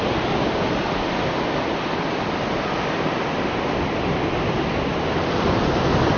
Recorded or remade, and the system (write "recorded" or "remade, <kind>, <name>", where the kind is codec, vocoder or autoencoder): recorded